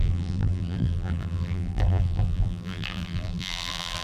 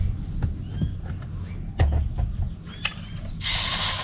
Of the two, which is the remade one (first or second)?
first